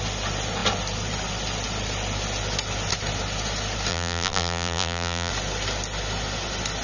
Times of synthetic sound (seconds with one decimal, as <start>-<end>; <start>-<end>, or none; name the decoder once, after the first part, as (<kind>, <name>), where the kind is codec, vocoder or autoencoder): 3.9-5.3 (vocoder, BigVGAN v2)